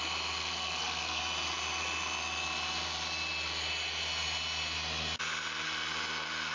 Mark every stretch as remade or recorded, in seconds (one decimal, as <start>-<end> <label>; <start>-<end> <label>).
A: 0.0-0.4 recorded; 0.4-1.2 remade; 1.2-6.5 recorded